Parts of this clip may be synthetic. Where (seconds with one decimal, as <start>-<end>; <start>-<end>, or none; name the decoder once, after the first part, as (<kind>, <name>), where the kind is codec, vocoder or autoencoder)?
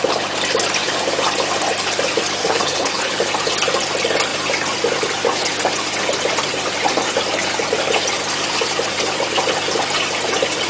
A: 2.4-3.3 (codec, HILCodec)